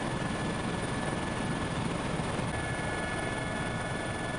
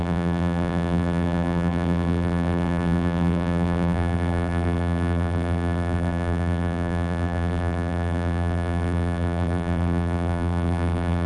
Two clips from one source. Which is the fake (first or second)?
second